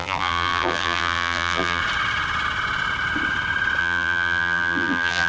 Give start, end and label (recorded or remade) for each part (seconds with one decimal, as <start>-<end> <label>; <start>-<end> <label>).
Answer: 0.0-1.8 remade; 1.8-3.8 recorded; 3.8-5.3 remade